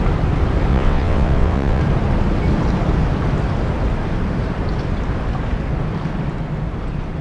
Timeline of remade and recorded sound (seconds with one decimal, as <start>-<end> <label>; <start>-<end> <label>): 0.0-0.7 recorded; 0.7-1.8 remade; 1.8-7.2 recorded